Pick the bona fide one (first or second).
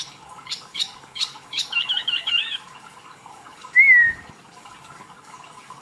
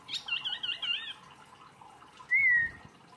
second